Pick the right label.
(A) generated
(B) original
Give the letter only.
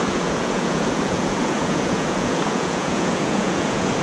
A